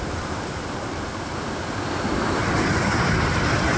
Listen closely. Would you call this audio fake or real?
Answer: fake